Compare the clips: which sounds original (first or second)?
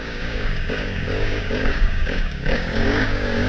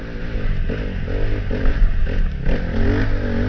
second